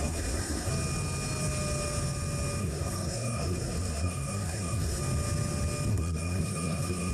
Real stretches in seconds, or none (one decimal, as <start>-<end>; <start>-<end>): 0.7-2.6; 5.0-5.9